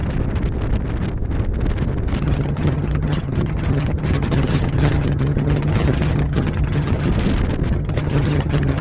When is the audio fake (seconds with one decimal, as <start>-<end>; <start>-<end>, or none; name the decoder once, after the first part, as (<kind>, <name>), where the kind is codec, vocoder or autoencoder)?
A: 2.2-7.1 (vocoder, HiFi-GAN); 7.7-8.8